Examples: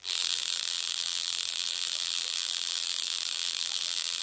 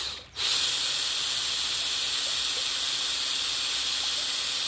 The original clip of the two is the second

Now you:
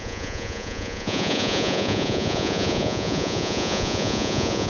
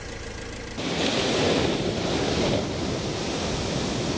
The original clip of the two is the second